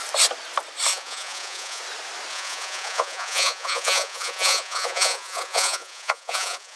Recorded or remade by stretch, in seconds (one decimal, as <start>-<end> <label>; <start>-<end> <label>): 0.0-0.9 recorded; 0.9-1.8 remade; 1.8-2.3 recorded; 2.3-6.8 remade